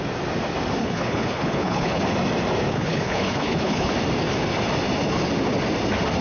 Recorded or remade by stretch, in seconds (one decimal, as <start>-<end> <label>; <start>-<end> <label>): 0.0-0.8 recorded; 0.8-2.0 remade; 2.0-2.7 recorded; 2.7-3.9 remade; 3.9-6.2 recorded